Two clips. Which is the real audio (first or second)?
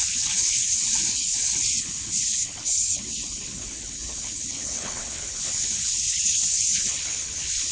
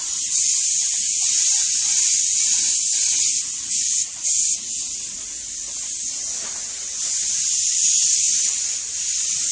second